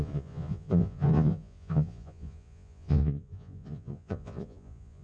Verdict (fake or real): fake